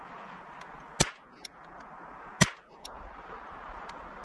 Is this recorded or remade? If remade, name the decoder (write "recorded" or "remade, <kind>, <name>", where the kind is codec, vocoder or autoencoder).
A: recorded